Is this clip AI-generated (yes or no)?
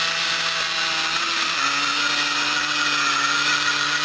no